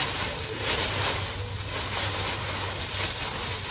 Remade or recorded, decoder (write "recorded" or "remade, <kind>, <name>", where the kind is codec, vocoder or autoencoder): recorded